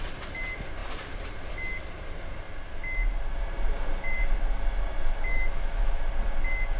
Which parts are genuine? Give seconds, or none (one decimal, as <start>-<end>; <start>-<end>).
0.0-5.3; 6.0-6.8